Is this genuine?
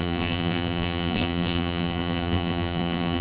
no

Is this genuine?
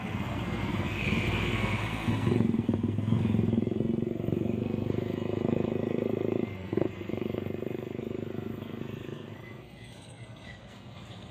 no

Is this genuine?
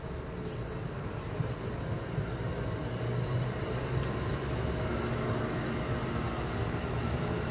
yes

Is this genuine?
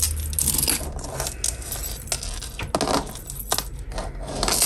yes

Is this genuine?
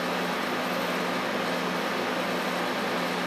yes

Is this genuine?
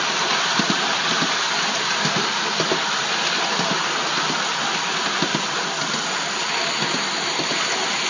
yes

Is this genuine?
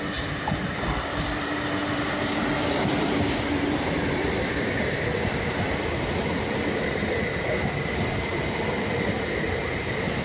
no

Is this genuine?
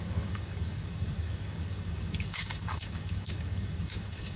no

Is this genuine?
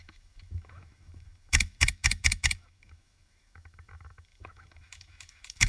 no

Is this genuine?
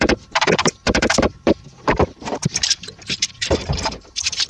no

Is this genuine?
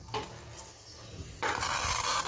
yes